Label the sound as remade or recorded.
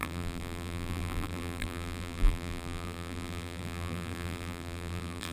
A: remade